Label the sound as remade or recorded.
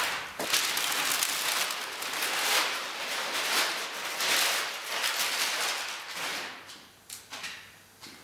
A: recorded